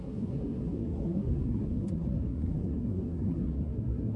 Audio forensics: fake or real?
fake